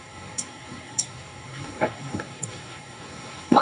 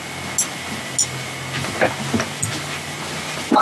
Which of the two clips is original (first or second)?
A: second